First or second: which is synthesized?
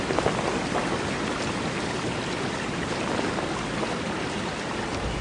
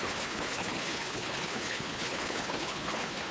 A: second